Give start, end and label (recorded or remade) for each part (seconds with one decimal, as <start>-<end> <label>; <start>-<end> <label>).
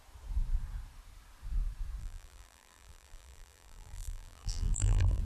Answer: 0.0-2.0 recorded; 2.0-5.2 remade